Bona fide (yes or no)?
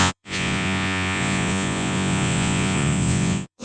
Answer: no